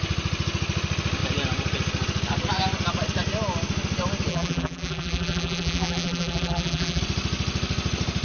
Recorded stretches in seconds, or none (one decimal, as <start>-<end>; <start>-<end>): 0.0-4.3; 7.0-8.2

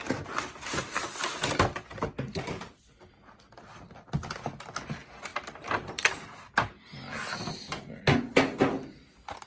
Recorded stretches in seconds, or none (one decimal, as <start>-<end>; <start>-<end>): 0.0-9.5